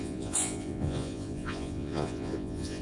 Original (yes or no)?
no